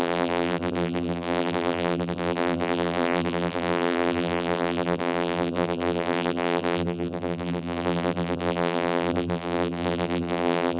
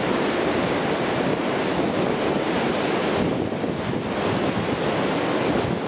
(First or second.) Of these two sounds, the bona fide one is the second